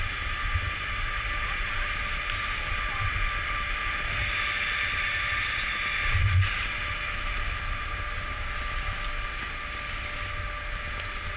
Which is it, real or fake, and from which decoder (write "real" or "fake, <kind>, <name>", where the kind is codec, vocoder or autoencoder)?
real